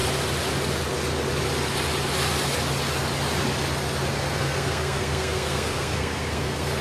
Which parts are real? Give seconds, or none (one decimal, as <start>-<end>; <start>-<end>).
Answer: 0.0-4.1